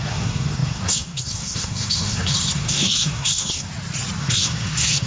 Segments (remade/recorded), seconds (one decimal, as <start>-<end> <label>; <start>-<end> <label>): 0.0-3.7 remade; 3.7-4.2 recorded; 4.2-5.1 remade